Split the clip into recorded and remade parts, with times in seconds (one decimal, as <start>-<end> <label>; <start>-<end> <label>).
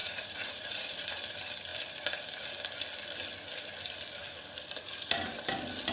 0.0-1.2 remade; 1.2-5.9 recorded